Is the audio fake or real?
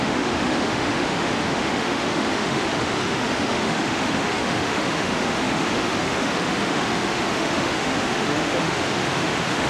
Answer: fake